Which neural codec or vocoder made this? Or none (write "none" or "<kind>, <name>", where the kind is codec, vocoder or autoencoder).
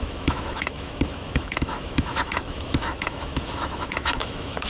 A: autoencoder, DAC-VAE